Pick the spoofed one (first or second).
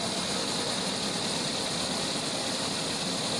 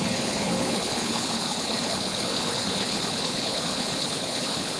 second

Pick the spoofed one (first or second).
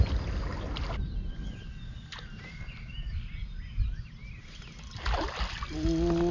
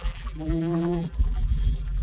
second